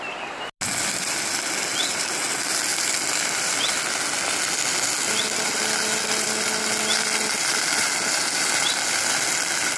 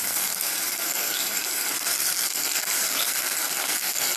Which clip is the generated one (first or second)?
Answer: second